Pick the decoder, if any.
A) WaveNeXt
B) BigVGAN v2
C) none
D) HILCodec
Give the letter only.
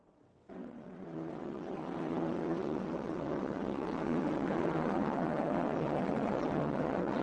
A